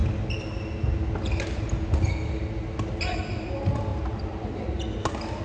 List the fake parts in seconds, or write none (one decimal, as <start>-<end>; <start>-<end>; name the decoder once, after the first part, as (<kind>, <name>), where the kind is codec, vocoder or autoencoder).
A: none